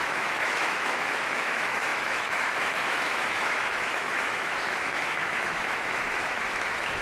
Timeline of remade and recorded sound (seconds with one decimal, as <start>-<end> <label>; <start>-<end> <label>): 0.0-7.0 remade